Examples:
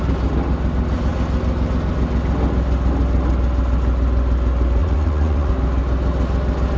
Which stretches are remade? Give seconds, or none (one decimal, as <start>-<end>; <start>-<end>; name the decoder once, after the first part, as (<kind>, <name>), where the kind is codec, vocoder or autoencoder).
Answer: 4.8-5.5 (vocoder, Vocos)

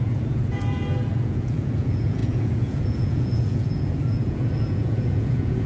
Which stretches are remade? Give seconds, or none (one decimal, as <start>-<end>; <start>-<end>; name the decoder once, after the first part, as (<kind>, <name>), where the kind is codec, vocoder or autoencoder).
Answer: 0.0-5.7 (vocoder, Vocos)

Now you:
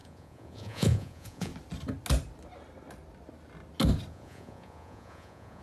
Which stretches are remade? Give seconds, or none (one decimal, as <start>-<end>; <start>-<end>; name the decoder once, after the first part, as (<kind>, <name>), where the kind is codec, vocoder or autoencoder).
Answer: 0.0-1.5 (vocoder, Vocos); 4.1-5.6